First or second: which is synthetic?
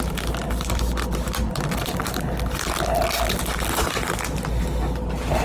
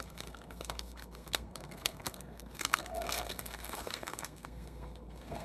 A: second